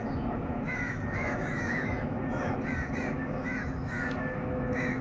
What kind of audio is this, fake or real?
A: fake